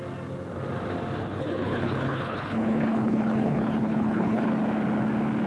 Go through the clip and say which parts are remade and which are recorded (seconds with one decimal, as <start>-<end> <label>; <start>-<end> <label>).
0.0-1.2 recorded; 1.2-4.5 remade; 4.5-5.5 recorded